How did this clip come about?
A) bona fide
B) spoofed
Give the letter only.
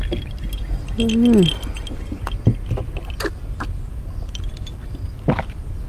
A